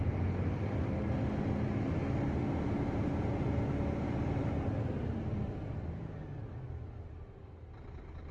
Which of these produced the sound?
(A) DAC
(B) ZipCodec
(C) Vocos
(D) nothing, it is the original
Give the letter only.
D